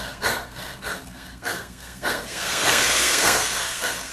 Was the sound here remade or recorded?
remade